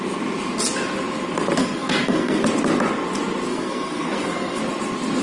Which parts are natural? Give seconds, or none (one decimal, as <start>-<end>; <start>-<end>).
0.0-1.6; 2.4-3.5; 4.6-5.2